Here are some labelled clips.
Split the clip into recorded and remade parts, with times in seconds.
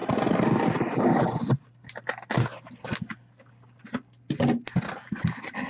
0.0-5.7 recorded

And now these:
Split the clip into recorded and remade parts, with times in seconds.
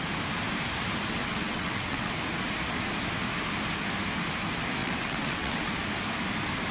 0.0-1.2 recorded; 1.2-2.1 remade; 2.1-4.8 recorded; 4.8-5.7 remade; 5.7-6.7 recorded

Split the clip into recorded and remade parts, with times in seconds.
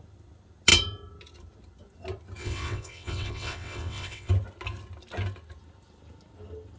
0.0-2.4 recorded; 2.4-4.3 remade; 4.3-6.8 recorded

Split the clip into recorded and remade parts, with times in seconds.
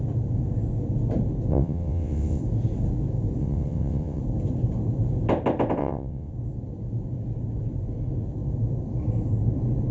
0.0-1.5 recorded; 1.5-2.4 remade; 2.4-3.4 recorded; 3.4-4.2 remade; 4.2-5.8 recorded; 5.8-6.3 remade; 6.3-9.9 recorded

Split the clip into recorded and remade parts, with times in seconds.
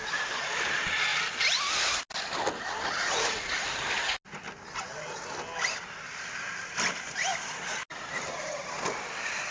0.0-9.5 recorded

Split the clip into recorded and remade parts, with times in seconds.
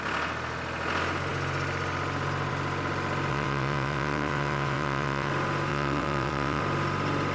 0.0-3.3 recorded; 3.3-5.3 remade; 5.3-5.7 recorded; 5.7-6.6 remade; 6.6-7.3 recorded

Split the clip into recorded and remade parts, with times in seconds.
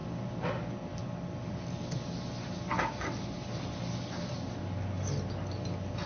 0.0-6.1 recorded